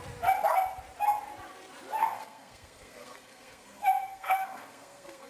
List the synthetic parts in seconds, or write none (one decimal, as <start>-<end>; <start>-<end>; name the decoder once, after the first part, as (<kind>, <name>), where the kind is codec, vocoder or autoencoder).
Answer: 2.0-5.3 (codec, SNAC)